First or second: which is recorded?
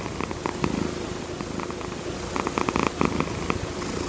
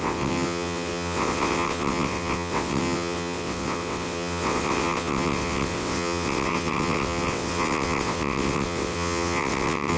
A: first